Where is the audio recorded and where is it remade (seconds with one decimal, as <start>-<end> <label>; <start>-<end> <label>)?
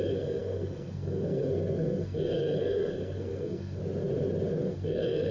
0.0-3.8 remade; 3.8-4.7 recorded; 4.7-5.3 remade